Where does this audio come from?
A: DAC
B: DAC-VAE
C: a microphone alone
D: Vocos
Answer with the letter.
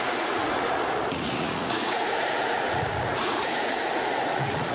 D